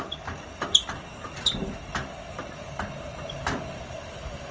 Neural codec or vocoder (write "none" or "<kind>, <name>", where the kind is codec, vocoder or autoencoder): none